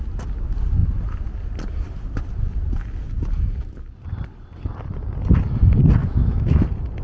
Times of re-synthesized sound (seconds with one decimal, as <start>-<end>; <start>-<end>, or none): 6.0-6.6